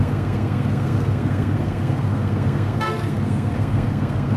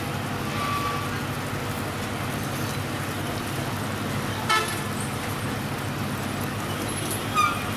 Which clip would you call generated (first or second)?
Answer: first